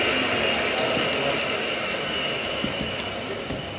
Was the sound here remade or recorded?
recorded